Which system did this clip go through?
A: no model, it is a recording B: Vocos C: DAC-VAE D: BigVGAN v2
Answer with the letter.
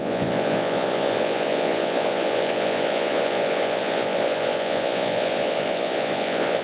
B